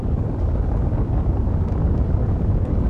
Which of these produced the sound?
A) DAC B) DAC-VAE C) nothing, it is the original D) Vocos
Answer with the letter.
A